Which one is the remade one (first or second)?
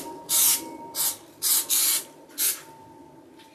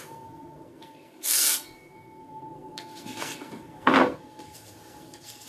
second